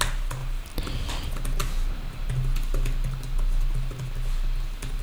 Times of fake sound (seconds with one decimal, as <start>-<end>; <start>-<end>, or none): none